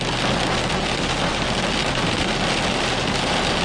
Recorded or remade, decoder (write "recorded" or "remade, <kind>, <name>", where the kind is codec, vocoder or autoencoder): recorded